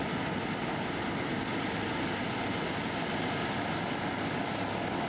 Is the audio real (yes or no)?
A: yes